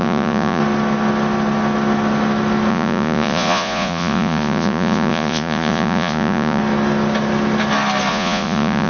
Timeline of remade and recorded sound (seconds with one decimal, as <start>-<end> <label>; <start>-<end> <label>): 0.0-0.6 remade; 0.6-2.7 recorded; 2.7-6.6 remade; 6.6-8.1 recorded; 8.1-8.9 remade